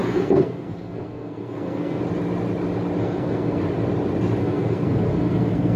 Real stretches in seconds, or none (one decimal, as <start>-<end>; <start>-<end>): 2.0-3.0; 3.6-4.4